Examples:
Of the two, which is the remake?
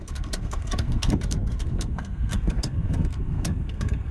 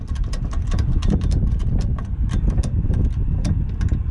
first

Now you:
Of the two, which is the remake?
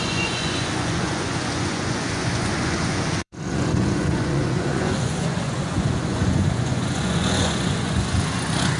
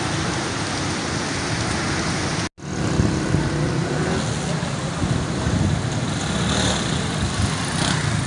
first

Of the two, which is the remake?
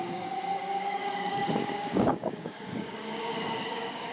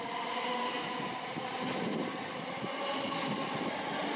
first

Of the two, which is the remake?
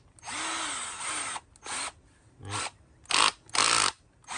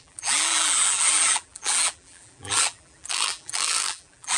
second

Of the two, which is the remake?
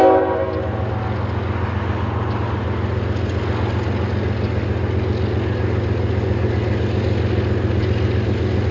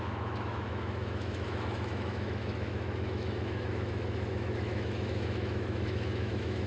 second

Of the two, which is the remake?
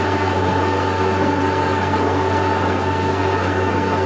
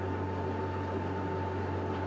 first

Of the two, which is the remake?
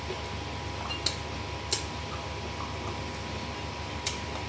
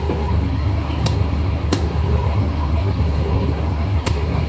second